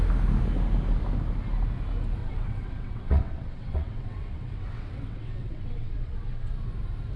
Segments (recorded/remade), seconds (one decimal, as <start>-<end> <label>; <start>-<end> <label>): 0.0-2.2 recorded; 2.2-6.5 remade; 6.5-7.2 recorded